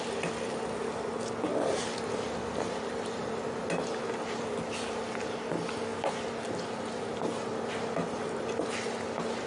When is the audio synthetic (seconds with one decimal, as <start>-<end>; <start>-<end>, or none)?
1.5-3.4